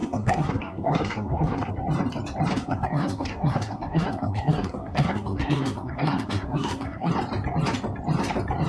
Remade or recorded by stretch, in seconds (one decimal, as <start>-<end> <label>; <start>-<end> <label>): 0.0-1.7 remade; 1.7-2.6 recorded; 2.6-7.1 remade; 7.1-8.7 recorded